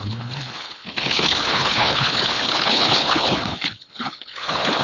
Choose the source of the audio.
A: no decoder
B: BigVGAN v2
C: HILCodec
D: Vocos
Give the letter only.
C